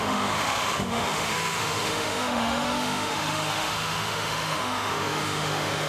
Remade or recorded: remade